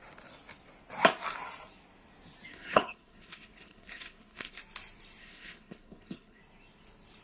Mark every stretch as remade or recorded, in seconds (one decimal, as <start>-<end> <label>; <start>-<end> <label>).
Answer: 0.0-2.5 recorded; 2.5-4.6 remade; 4.6-5.2 recorded; 5.2-6.4 remade; 6.4-7.2 recorded